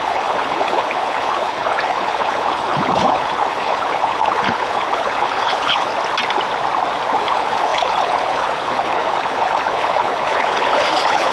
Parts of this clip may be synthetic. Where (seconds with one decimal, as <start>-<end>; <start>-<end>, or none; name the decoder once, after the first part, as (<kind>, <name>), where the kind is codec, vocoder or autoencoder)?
0.0-5.9 (codec, HILCodec); 7.2-11.3